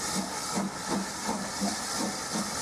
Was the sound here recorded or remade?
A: recorded